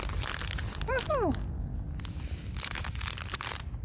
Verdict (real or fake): fake